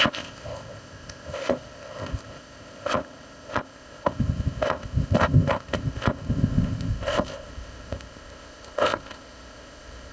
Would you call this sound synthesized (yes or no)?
yes